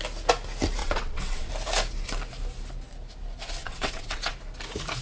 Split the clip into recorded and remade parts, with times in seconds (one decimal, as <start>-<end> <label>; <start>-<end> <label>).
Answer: 0.0-0.8 recorded; 0.8-1.5 remade; 1.5-3.6 recorded; 3.6-4.3 remade; 4.3-5.0 recorded